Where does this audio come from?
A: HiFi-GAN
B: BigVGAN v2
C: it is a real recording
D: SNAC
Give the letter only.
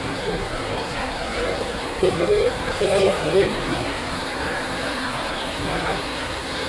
D